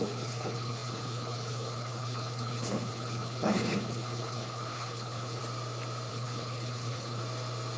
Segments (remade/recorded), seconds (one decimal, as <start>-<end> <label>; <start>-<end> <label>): 0.0-5.4 remade; 5.4-6.1 recorded; 6.1-7.2 remade; 7.2-7.8 recorded